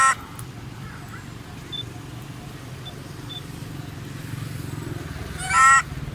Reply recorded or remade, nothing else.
recorded